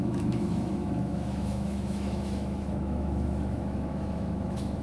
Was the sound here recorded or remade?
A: remade